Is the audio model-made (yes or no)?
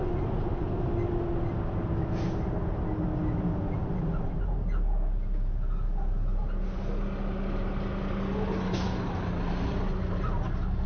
no